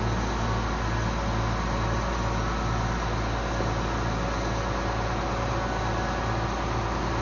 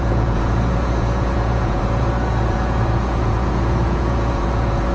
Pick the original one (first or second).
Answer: first